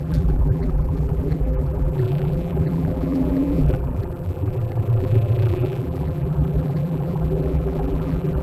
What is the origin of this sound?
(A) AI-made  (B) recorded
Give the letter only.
A